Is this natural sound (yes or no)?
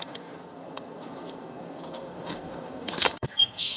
no